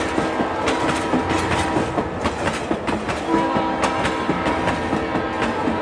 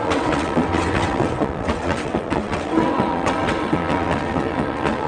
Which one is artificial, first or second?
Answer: second